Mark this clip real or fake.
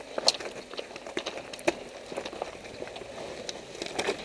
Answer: real